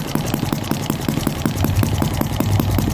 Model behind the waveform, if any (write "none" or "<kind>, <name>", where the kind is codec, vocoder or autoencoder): vocoder, BigVGAN v2